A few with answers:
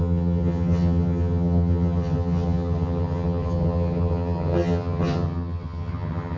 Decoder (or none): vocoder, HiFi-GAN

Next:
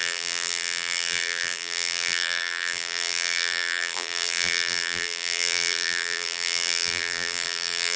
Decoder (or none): vocoder, BigVGAN v2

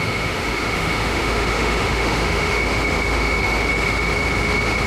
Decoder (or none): autoencoder, DAC-VAE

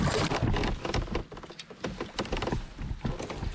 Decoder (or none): none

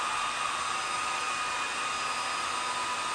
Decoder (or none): none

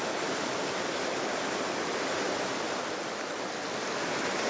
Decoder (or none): none